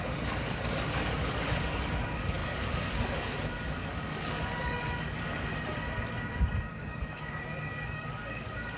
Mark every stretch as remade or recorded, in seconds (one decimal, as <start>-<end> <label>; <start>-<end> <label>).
0.0-5.5 remade; 5.5-6.6 recorded; 6.6-8.8 remade